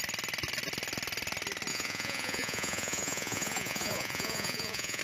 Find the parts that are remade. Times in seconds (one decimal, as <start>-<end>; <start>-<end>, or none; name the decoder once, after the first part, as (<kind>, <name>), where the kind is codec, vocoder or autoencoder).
1.7-5.0 (vocoder, Vocos)